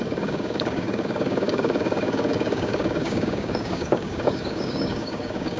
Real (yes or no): no